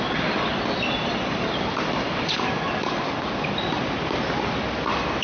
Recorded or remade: recorded